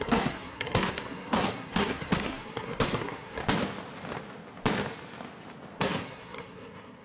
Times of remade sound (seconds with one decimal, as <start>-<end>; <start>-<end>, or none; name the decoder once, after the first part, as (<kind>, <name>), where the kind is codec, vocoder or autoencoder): 0.0-3.4 (codec, SNAC); 5.8-7.0